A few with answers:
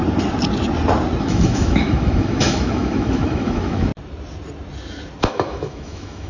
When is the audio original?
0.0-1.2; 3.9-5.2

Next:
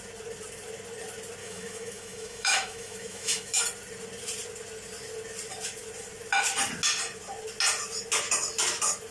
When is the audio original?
0.0-1.4; 3.6-9.1

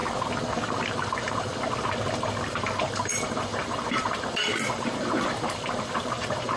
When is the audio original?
0.0-0.5; 1.5-2.0

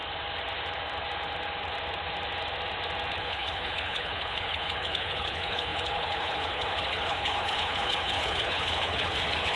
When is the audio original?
0.0-3.2

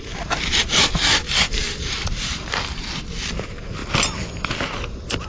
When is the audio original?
3.8-5.3